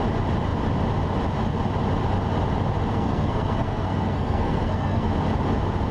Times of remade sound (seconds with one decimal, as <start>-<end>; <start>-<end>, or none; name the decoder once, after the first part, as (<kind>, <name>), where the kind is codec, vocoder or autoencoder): 2.9-5.1 (codec, SNAC)